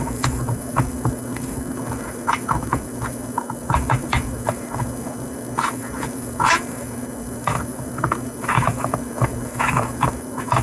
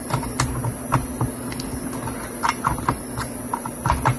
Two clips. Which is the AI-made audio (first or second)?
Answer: first